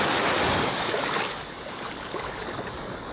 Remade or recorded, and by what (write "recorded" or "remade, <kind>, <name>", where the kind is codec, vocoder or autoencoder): remade, codec, DAC